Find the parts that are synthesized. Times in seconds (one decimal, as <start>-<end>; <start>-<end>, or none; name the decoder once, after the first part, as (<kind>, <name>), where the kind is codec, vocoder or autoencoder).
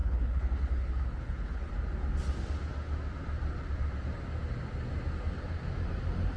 0.0-1.7 (codec, HILCodec)